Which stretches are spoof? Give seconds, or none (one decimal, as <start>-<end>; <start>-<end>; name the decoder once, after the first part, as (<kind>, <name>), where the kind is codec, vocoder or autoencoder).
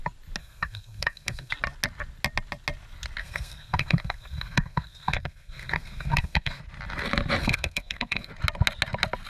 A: 0.4-1.5 (codec, SNAC); 3.2-6.6; 7.4-8.3